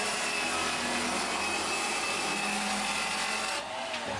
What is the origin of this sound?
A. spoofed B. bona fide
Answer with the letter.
B